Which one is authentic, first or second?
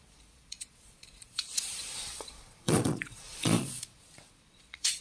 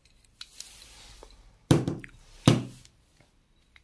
second